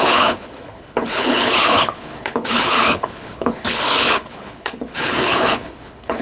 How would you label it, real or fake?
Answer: fake